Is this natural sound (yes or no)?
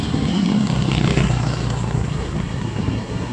no